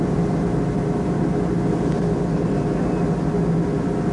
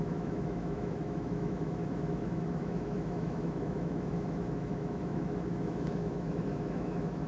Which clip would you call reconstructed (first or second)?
second